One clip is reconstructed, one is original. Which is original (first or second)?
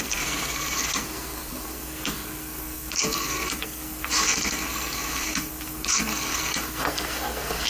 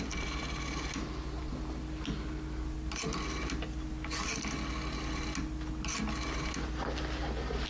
second